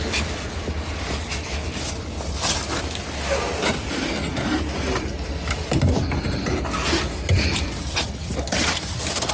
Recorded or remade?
recorded